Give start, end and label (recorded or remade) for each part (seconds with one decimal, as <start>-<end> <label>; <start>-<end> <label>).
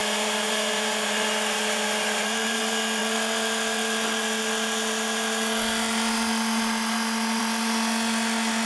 0.0-2.6 remade; 2.6-8.7 recorded